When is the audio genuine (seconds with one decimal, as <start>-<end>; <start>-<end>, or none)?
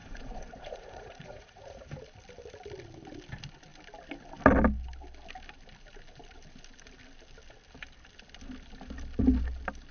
1.9-9.9